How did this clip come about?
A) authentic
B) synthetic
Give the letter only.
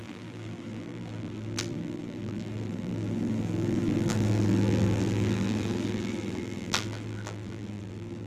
B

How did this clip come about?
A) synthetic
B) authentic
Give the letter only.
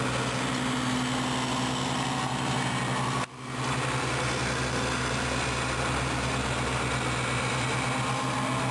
B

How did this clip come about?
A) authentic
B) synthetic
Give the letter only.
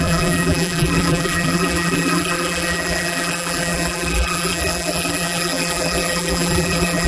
B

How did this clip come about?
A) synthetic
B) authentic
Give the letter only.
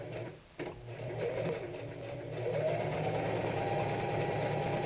B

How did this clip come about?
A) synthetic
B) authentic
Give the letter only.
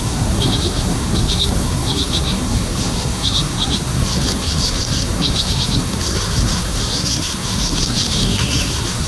A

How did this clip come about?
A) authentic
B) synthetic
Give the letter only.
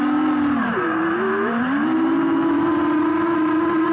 A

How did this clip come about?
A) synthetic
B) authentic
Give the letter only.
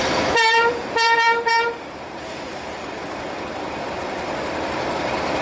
A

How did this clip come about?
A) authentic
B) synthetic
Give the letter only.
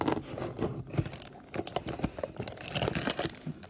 A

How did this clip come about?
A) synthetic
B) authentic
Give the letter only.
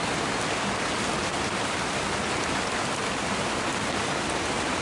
A